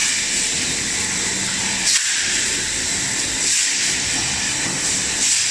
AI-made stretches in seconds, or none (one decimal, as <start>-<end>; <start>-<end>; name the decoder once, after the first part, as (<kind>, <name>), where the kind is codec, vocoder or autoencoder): none